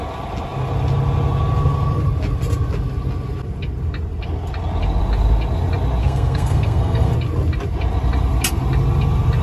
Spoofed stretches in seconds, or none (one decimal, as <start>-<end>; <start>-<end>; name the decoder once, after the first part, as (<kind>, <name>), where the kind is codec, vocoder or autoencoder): 6.0-7.1 (codec, SNAC)